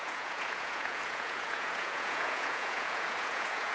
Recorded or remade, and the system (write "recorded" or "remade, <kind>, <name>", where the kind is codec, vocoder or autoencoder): remade, vocoder, Vocos